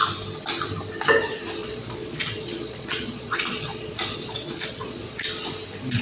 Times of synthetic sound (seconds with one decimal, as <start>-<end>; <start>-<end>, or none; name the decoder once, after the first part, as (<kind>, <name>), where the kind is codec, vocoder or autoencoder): 1.6-5.2 (vocoder, Vocos)